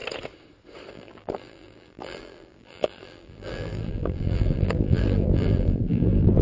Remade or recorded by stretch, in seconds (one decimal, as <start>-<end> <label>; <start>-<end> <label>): 0.0-0.9 recorded; 0.9-6.4 remade